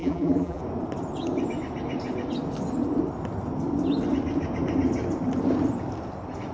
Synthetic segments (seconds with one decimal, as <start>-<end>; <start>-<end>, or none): 0.0-0.6